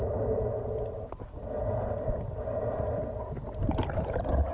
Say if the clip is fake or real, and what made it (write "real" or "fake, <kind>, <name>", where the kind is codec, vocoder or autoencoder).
real